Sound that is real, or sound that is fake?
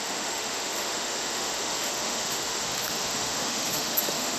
fake